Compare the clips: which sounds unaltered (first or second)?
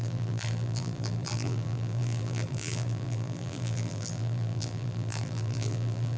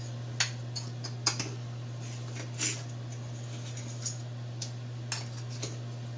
second